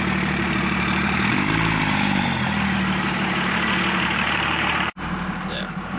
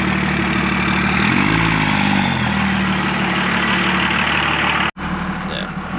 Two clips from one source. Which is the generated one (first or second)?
first